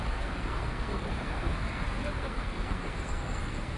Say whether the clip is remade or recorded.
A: remade